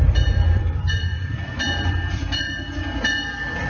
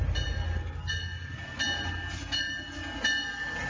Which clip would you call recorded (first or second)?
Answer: second